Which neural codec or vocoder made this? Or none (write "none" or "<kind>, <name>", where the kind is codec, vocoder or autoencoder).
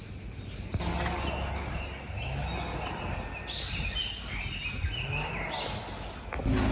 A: none